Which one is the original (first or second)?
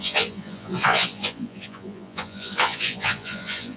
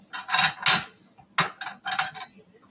second